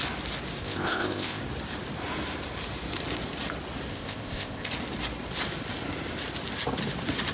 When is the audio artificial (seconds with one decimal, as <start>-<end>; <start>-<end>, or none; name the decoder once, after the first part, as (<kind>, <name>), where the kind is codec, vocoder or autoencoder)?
0.6-1.4 (codec, ZipCodec); 3.9-4.7